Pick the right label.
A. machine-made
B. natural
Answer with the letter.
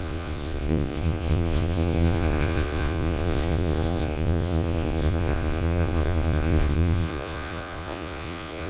A